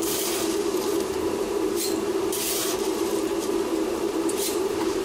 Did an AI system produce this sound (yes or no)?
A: yes